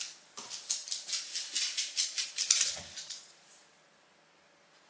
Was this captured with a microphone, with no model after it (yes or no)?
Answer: yes